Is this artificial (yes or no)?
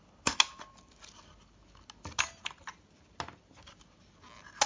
no